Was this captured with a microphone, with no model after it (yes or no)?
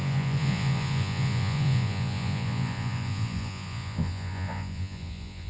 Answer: no